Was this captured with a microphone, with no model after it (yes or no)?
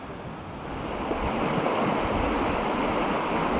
yes